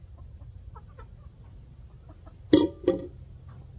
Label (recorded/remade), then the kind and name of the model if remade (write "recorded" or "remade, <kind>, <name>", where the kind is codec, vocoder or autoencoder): recorded